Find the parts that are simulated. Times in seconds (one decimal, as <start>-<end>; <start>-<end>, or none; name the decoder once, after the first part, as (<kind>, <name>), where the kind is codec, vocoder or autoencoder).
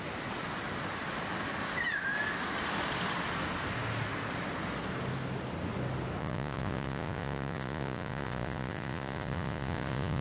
6.2-10.2 (vocoder, Vocos)